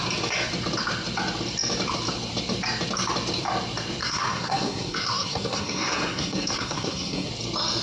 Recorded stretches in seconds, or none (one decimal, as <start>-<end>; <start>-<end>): 0.0-4.0; 7.3-7.8